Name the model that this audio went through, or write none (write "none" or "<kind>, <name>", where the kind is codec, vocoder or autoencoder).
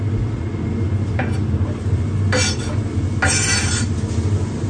none